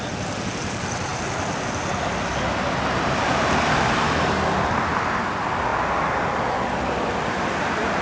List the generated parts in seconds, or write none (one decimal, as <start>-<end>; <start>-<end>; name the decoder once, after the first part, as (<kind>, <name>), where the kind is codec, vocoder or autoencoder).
none